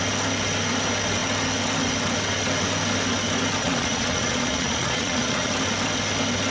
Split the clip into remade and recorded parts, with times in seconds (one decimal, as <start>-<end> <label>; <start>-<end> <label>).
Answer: 0.0-3.6 recorded; 3.6-5.5 remade; 5.5-6.5 recorded